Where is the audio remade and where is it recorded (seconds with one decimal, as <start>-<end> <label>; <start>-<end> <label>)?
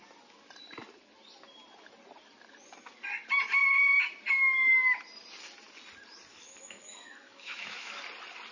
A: 0.0-6.3 recorded; 6.3-8.0 remade; 8.0-8.5 recorded